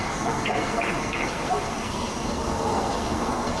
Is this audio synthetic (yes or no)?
yes